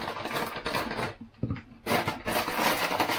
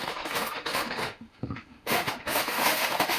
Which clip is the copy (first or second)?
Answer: second